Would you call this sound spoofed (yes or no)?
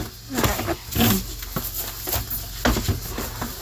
no